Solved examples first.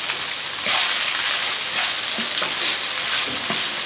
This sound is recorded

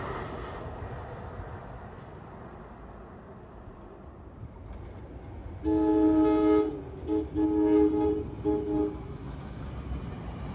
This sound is recorded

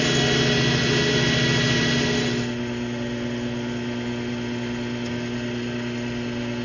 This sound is recorded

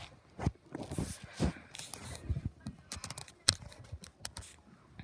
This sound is recorded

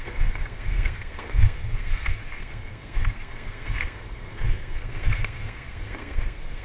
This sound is remade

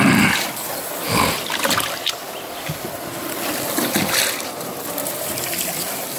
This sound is recorded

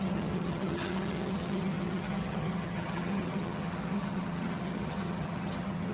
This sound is remade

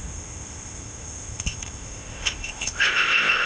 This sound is remade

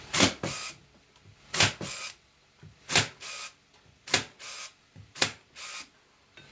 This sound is recorded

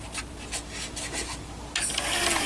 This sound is recorded